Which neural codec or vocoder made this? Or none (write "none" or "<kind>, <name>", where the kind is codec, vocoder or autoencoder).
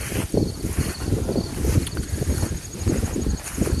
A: none